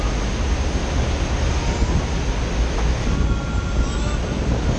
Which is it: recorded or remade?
recorded